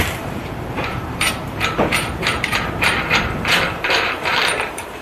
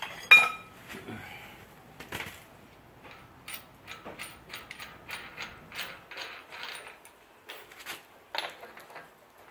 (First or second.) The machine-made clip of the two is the first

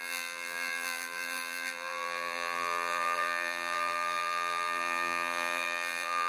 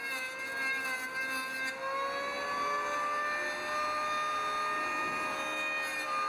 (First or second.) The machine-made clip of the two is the first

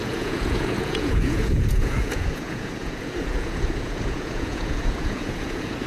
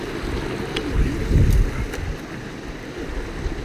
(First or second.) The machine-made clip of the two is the first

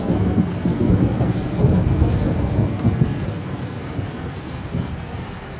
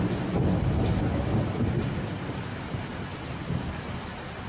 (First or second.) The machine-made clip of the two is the first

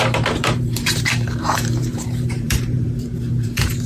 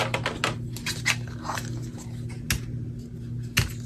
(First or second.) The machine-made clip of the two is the first